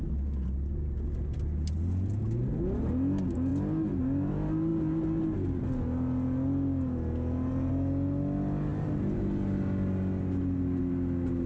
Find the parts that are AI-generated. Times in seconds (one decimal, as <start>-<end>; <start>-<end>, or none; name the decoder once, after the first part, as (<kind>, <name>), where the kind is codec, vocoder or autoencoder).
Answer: none

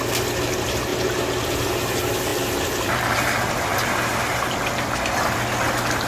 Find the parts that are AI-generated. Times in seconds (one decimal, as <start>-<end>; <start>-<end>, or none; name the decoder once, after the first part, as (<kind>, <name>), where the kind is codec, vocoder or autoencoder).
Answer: 0.9-1.9 (vocoder, BigVGAN v2)

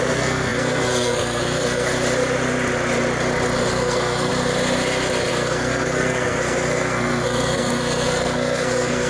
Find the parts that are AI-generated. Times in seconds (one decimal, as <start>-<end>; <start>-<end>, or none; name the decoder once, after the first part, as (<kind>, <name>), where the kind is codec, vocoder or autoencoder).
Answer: 0.0-1.9 (codec, SNAC); 3.7-4.3; 5.3-9.1

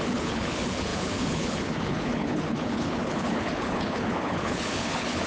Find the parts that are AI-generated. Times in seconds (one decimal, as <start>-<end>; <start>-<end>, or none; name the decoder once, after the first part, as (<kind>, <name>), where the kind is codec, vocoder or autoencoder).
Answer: 0.0-5.3 (codec, HILCodec)

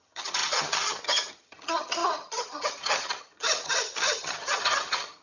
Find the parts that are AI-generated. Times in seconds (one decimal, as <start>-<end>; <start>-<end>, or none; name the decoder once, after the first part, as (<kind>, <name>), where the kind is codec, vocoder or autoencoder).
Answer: 0.0-5.2 (vocoder, HiFi-GAN)

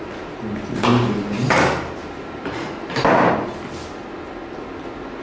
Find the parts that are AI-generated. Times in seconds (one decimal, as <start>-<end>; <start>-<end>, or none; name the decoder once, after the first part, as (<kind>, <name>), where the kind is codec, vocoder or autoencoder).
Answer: 0.9-1.5 (vocoder, BigVGAN v2); 2.0-3.3

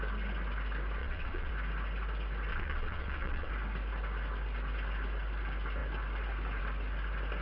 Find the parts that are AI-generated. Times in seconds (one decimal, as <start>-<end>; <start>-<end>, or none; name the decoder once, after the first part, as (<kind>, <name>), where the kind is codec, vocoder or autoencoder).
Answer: 1.0-1.5 (vocoder, WaveNeXt); 2.5-3.5